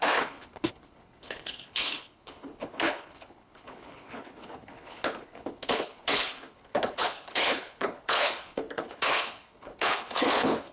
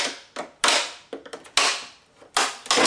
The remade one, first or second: first